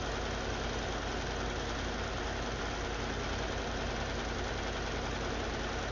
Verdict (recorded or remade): recorded